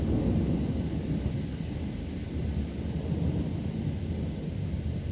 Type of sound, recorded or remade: recorded